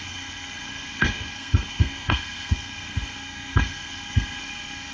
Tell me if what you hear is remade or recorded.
remade